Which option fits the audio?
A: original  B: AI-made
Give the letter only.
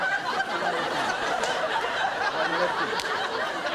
B